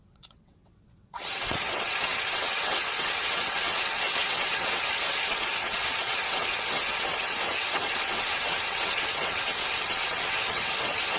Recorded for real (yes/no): no